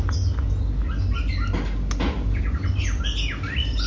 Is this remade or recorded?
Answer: recorded